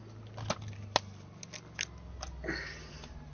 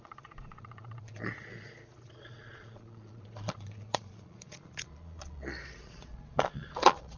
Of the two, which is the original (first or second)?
first